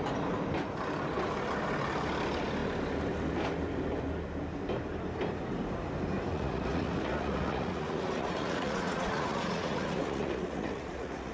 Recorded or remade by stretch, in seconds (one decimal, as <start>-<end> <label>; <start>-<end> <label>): 0.0-6.3 recorded; 6.3-11.3 remade